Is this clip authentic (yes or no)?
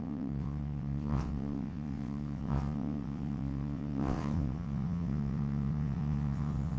no